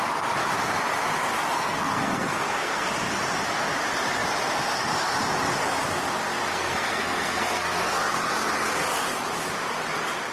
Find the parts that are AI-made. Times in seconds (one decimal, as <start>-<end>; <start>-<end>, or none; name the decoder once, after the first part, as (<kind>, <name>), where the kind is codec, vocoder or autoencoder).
1.5-2.9 (codec, SNAC); 6.5-8.3